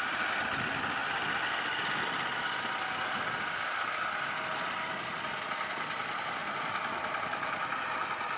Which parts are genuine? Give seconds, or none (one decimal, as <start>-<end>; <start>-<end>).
0.0-8.4

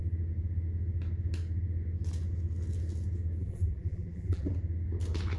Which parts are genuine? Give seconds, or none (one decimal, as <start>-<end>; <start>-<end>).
0.0-3.4; 4.5-5.4

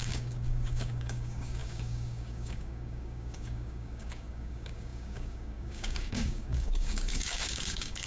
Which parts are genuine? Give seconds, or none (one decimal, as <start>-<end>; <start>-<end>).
none